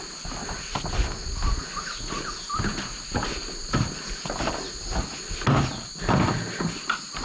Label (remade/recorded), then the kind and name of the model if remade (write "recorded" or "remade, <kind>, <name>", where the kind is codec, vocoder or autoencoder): recorded